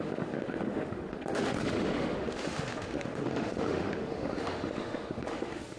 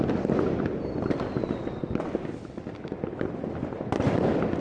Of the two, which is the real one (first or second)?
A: second